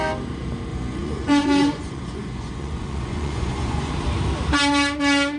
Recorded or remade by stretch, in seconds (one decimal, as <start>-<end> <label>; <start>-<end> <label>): 0.0-0.7 recorded; 0.7-3.9 remade; 3.9-5.4 recorded